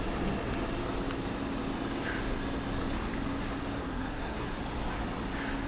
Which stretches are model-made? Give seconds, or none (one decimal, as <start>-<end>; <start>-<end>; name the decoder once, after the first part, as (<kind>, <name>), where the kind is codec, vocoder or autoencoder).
3.8-4.5 (codec, SNAC)